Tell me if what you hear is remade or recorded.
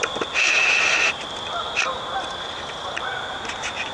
remade